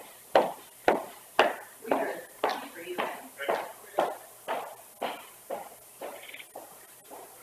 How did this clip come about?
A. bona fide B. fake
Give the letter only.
A